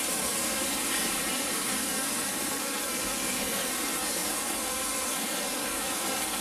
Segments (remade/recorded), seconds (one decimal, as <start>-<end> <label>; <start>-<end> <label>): 0.0-0.8 remade; 0.8-1.3 recorded; 1.3-6.4 remade